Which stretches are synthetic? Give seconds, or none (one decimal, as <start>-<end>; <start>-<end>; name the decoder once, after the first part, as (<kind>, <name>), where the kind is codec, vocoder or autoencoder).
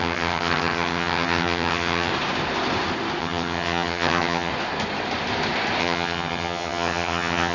0.0-2.1 (vocoder, HiFi-GAN); 3.2-4.5; 5.8-7.5